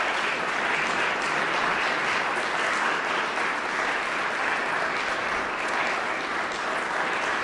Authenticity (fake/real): real